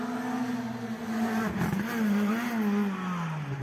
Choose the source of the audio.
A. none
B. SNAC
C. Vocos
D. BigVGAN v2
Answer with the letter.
A